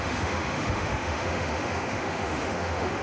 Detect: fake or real fake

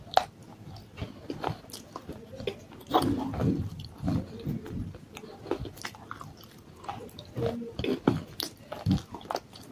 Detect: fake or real real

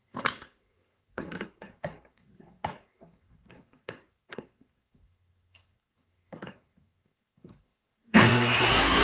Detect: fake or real fake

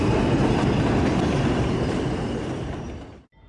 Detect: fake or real real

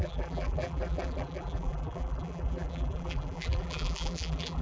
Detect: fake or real fake